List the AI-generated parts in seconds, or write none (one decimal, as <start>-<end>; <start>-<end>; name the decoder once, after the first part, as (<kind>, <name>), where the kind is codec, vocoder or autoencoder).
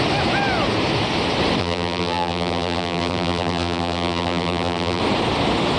1.6-5.0 (vocoder, BigVGAN v2)